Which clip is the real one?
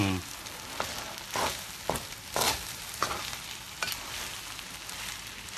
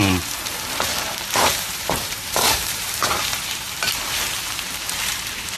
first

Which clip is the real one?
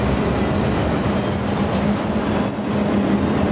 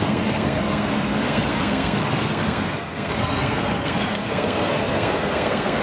first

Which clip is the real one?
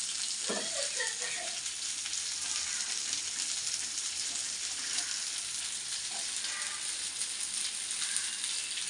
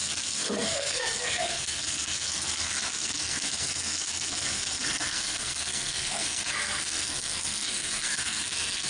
first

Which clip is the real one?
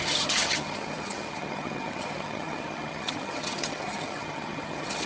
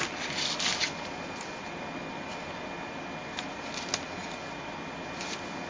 second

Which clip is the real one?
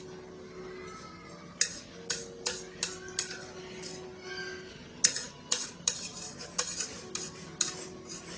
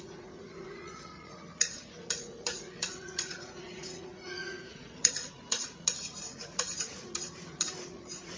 first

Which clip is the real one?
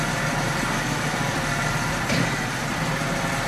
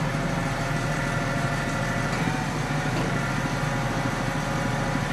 second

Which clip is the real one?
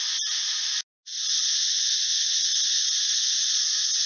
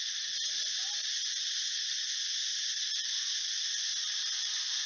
first